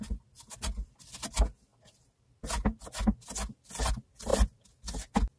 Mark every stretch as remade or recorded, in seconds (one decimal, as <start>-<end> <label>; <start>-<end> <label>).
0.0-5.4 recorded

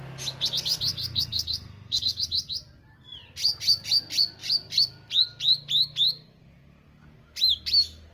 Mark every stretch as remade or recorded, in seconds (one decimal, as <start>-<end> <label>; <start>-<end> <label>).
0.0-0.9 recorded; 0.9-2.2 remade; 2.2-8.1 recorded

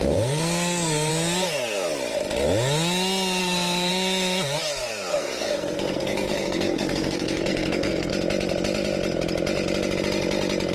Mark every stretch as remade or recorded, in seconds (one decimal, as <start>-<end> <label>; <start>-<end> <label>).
0.0-1.1 remade; 1.1-3.4 recorded; 3.4-3.9 remade; 3.9-5.1 recorded; 5.1-8.1 remade; 8.1-10.7 recorded

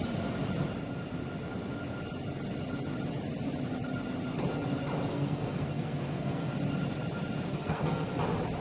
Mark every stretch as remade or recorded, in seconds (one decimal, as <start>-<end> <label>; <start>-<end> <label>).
0.0-5.1 recorded; 5.1-6.5 remade; 6.5-7.5 recorded; 7.5-8.2 remade; 8.2-8.6 recorded